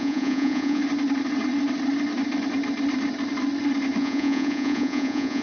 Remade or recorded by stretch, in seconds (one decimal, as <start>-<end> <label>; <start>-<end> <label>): 0.0-0.8 remade; 0.8-4.0 recorded; 4.0-5.4 remade